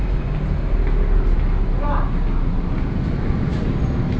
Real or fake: real